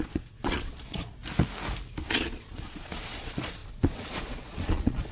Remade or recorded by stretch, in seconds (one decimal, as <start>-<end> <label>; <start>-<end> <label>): 0.0-1.2 remade; 1.2-2.0 recorded; 2.0-5.1 remade